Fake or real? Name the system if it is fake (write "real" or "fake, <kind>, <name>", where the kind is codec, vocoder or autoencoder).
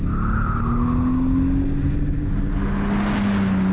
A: real